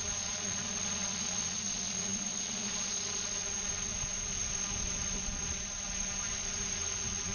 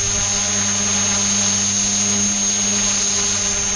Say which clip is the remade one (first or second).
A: first